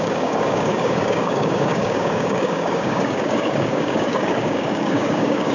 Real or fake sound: fake